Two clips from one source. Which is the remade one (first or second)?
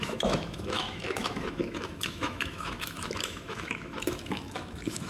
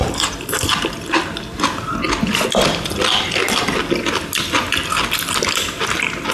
first